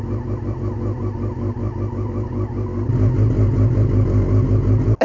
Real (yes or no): yes